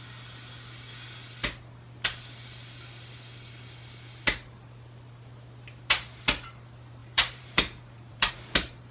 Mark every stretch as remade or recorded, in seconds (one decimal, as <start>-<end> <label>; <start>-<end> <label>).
0.0-7.0 recorded; 7.0-8.3 remade; 8.3-8.9 recorded